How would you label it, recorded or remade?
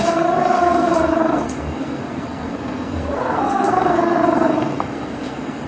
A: remade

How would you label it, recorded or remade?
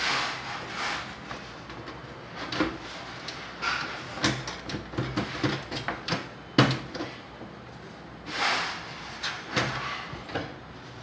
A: recorded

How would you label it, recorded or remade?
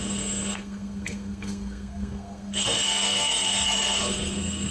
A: remade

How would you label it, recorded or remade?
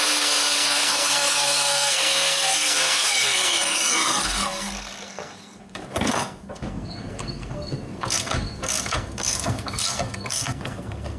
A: remade